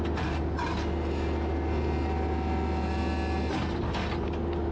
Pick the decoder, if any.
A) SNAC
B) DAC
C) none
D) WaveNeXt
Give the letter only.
C